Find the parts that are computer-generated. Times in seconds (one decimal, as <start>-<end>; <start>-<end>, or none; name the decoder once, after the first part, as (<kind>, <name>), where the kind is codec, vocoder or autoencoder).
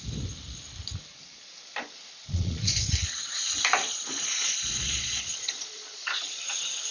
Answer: 2.2-2.8 (vocoder, Vocos); 3.8-6.5